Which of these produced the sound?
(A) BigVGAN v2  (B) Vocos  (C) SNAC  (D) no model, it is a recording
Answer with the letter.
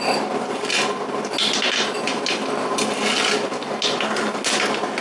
D